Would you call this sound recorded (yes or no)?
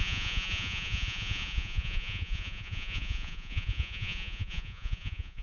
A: no